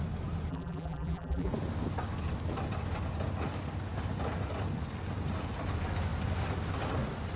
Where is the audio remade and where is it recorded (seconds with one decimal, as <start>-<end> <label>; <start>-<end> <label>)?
0.0-0.5 recorded; 0.5-1.5 remade; 1.5-7.4 recorded